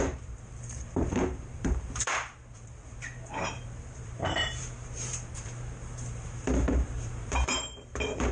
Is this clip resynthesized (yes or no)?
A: yes